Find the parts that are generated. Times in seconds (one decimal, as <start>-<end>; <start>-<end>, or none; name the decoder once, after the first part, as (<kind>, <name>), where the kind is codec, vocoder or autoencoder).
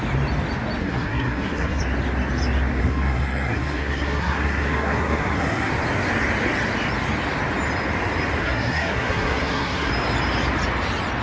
0.8-1.8 (codec, SNAC); 2.8-5.7; 8.4-9.9